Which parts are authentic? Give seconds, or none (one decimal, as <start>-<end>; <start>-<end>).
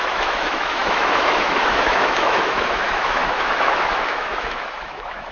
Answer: none